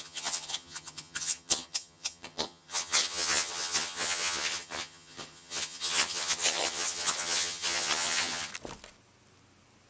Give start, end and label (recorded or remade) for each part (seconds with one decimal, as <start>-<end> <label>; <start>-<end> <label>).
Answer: 0.0-8.5 remade; 8.5-9.9 recorded